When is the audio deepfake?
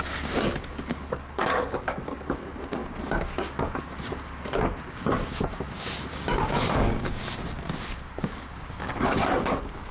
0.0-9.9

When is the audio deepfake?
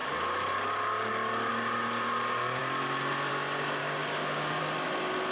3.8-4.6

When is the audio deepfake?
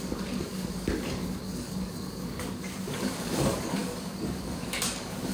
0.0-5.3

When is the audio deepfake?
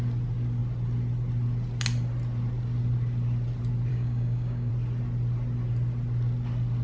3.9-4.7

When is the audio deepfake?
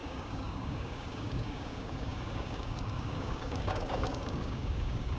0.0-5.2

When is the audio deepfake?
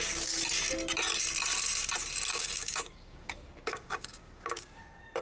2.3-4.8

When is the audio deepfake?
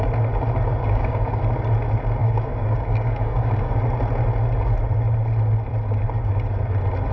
0.8-1.4; 2.2-3.8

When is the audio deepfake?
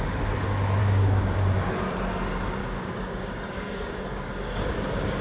0.8-1.7; 2.6-5.2